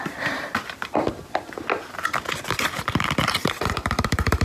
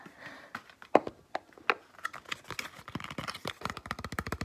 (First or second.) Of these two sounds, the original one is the second